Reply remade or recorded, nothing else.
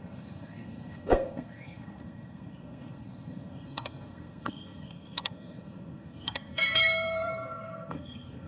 remade